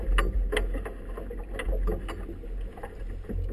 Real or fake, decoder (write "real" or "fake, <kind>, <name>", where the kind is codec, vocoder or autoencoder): real